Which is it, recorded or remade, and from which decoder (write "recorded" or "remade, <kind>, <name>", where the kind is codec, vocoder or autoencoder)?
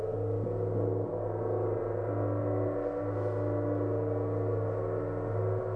recorded